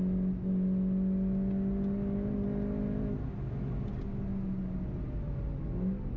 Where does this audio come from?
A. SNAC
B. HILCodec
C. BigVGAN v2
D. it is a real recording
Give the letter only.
D